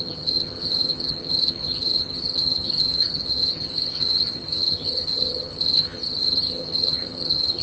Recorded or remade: remade